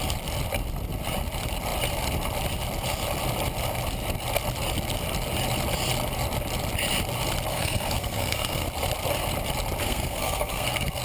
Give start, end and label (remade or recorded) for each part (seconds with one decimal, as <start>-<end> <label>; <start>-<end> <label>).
0.0-7.5 recorded; 7.5-8.7 remade; 8.7-9.8 recorded; 9.8-11.0 remade